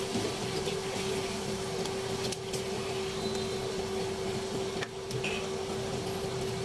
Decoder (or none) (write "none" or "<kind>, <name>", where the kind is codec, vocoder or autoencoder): none